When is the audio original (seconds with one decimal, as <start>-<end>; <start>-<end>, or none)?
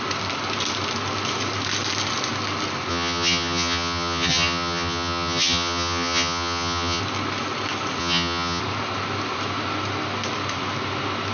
0.0-2.9; 7.0-8.0; 8.6-11.3